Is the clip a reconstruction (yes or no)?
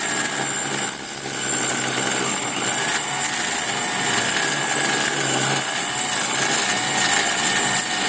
no